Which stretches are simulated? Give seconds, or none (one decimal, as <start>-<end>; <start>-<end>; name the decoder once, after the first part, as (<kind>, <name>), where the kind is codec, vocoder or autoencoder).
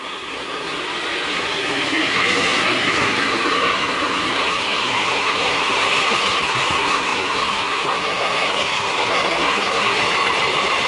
0.0-0.8 (codec, SNAC); 1.3-10.0